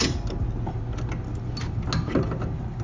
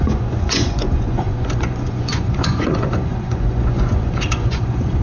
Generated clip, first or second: second